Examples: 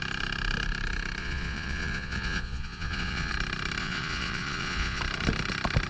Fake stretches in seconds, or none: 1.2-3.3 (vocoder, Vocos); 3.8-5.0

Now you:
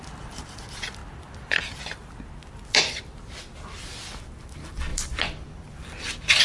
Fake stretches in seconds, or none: 1.0-1.8 (vocoder, BigVGAN v2); 4.9-6.4

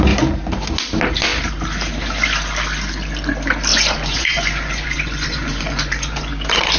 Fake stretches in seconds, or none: 3.7-6.3 (vocoder, Vocos)

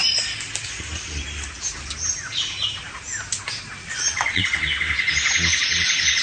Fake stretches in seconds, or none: 3.8-4.4 (vocoder, Vocos)